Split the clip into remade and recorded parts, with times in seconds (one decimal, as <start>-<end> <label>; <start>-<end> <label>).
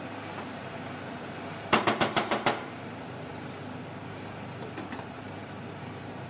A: 0.0-0.6 remade; 0.6-1.1 recorded; 1.1-3.3 remade; 3.3-4.0 recorded; 4.0-6.3 remade